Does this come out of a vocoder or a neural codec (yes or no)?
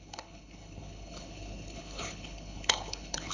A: yes